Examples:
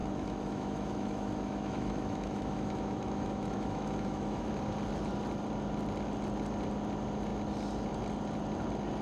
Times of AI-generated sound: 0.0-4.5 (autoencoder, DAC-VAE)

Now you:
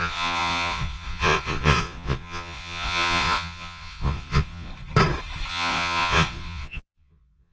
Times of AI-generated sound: 0.0-4.7 (vocoder, Vocos); 5.5-7.5